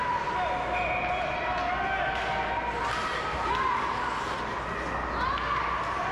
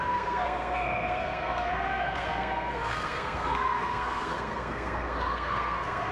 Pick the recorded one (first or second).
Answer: first